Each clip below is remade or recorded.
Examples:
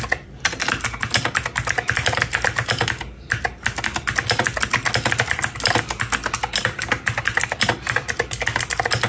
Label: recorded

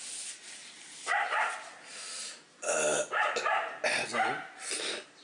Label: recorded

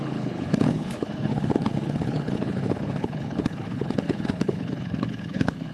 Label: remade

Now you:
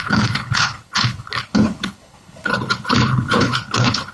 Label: remade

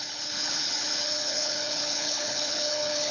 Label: remade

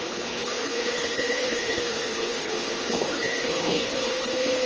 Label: remade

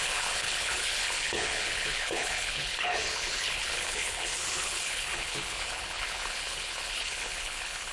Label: remade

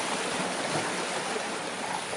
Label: recorded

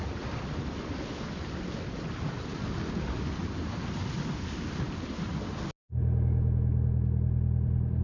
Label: recorded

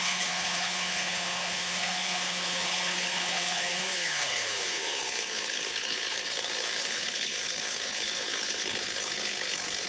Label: remade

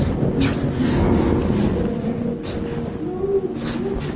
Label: recorded